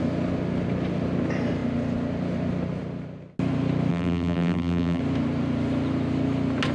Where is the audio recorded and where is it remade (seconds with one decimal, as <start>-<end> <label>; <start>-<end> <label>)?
0.0-3.9 recorded; 3.9-5.0 remade; 5.0-6.7 recorded